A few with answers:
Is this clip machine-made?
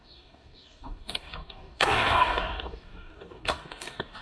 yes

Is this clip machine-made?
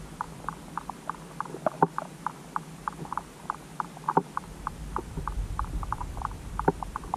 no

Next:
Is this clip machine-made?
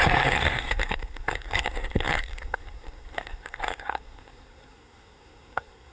yes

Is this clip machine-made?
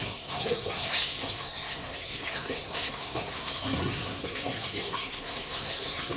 yes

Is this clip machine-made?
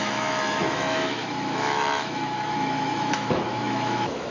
yes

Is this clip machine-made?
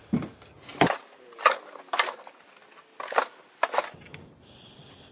no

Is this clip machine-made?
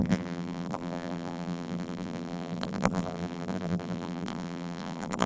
yes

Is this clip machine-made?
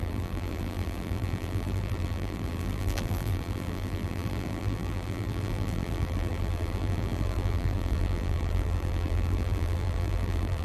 yes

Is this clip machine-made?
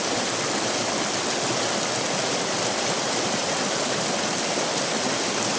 no